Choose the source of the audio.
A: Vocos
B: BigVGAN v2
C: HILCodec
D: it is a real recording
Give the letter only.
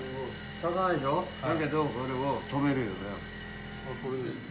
D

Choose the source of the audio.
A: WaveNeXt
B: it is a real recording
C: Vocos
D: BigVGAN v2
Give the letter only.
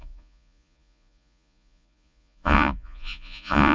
C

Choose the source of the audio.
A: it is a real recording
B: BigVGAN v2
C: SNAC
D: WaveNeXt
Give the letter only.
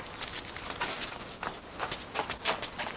A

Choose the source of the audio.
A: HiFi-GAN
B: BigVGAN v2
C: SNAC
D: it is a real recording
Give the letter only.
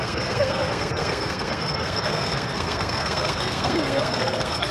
C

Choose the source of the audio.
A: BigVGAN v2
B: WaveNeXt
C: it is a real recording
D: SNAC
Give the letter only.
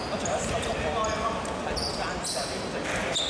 C